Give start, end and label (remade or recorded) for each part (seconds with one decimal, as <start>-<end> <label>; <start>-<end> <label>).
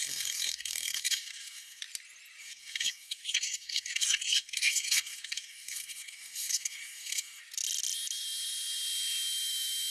0.0-1.8 remade; 1.8-2.4 recorded; 2.4-7.4 remade; 7.4-9.9 recorded